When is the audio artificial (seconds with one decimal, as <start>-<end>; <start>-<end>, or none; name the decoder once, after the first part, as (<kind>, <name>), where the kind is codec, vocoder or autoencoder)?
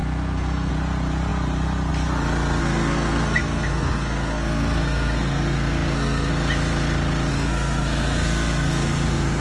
0.0-0.7 (codec, SNAC); 2.6-6.3; 7.3-9.4